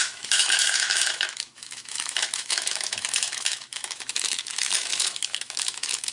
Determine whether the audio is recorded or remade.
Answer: remade